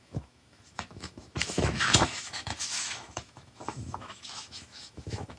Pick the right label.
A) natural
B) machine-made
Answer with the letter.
B